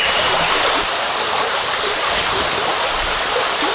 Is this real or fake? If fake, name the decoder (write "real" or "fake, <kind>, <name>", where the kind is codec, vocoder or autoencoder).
real